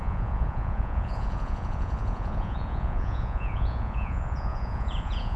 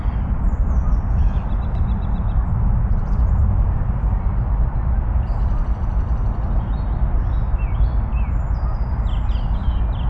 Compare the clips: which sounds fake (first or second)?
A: first